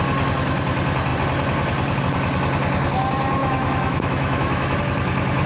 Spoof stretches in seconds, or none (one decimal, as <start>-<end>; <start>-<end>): 3.4-4.8